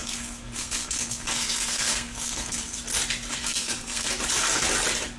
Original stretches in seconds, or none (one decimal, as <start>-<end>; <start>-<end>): 2.8-3.3; 4.1-5.2